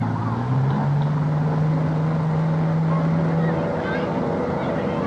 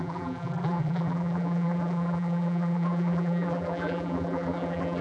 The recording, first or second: first